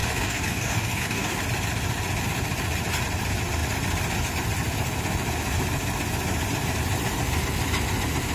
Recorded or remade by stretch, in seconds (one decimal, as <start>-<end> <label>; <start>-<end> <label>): 0.0-1.4 remade; 1.4-8.3 recorded